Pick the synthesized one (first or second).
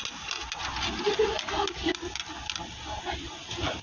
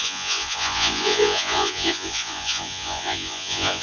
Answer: second